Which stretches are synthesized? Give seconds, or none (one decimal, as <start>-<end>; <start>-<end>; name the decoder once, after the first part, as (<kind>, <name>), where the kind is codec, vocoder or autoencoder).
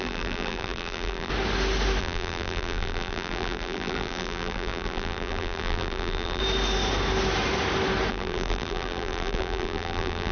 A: 0.0-1.3 (vocoder, BigVGAN v2); 2.0-6.4; 8.1-10.3